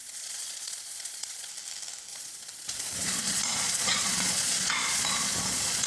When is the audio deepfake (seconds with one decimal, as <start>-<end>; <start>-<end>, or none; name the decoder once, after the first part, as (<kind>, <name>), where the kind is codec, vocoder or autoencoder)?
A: 0.0-1.5 (vocoder, Vocos); 2.1-5.9